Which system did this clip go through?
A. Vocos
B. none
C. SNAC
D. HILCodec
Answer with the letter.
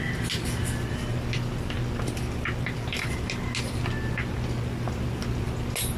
B